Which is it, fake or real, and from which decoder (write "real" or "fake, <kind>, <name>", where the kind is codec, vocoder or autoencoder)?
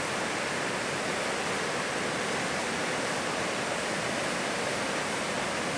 real